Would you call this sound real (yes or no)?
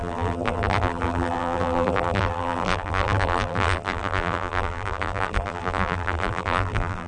no